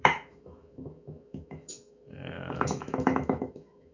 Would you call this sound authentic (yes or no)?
no